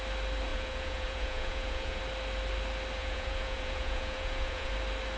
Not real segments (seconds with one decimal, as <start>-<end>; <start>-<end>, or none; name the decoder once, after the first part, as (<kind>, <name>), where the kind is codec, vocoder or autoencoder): 0.5-2.0 (vocoder, Vocos); 3.0-4.7